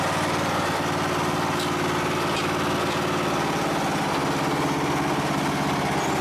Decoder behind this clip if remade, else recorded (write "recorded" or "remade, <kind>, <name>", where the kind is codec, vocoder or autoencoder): recorded